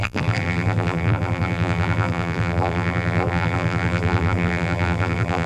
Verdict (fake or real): fake